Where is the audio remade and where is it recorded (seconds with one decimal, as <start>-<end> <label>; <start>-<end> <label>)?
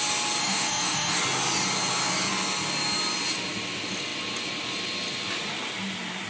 0.0-0.4 recorded; 0.4-1.2 remade; 1.2-6.3 recorded